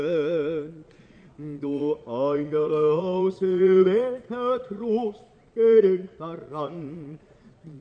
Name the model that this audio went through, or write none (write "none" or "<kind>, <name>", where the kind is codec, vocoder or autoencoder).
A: vocoder, Vocos